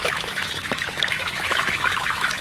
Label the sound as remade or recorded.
remade